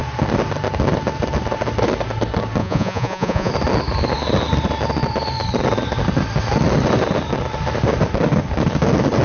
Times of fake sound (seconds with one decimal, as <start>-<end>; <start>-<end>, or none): 2.6-3.5